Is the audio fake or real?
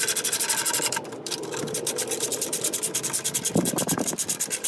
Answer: fake